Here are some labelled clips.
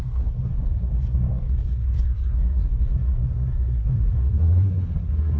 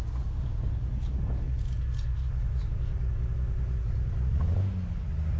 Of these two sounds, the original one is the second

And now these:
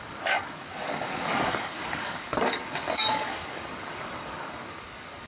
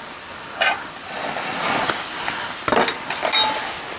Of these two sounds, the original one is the second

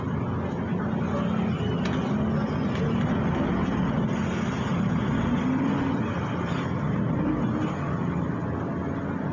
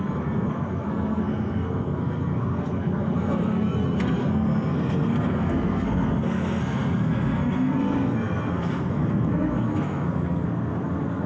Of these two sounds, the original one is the first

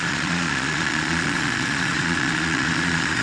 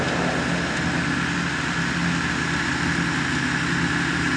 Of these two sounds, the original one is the second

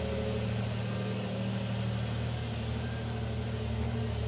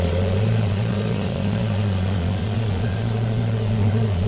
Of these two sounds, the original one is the first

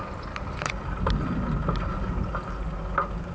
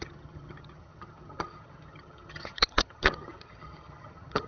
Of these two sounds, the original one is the first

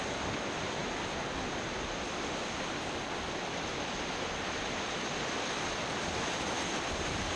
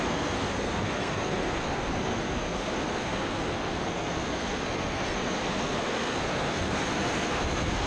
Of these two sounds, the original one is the first